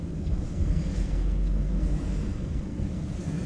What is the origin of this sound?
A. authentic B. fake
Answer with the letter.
B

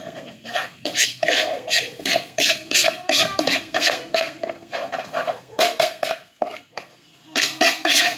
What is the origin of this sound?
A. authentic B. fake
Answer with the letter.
B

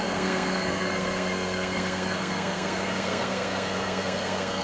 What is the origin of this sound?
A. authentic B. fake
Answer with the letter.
B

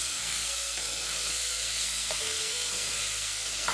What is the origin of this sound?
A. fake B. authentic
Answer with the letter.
A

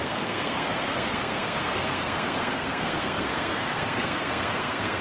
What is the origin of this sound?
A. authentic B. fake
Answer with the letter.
B